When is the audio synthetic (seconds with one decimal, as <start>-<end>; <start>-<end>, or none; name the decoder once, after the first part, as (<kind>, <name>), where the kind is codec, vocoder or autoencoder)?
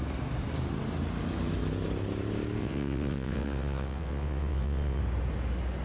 2.6-5.0 (vocoder, WaveNeXt)